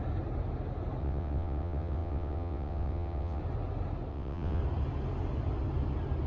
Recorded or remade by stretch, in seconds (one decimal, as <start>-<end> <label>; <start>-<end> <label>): 0.0-1.0 recorded; 1.0-3.4 remade; 3.4-4.1 recorded; 4.1-4.6 remade; 4.6-6.3 recorded